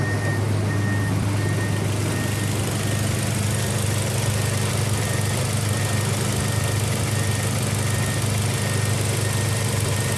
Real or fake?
real